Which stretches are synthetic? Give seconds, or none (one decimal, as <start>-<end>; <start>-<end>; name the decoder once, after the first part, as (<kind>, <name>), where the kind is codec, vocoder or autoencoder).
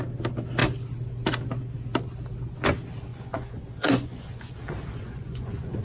3.1-5.8 (vocoder, Vocos)